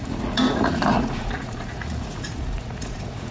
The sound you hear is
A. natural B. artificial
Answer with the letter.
B